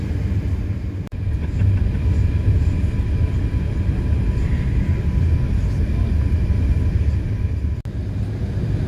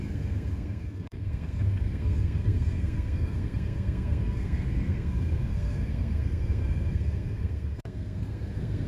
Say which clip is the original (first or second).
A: first